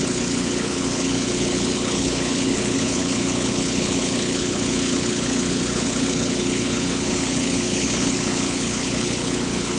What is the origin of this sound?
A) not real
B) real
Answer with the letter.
A